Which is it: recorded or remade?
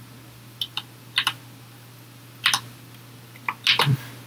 recorded